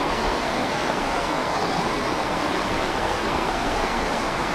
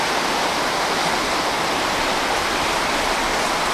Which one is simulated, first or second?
first